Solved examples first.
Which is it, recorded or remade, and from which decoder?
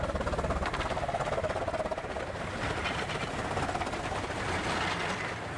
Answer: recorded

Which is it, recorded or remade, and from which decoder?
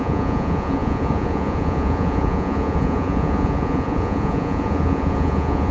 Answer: remade, vocoder, Vocos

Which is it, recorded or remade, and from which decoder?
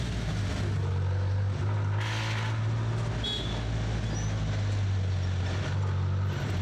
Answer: recorded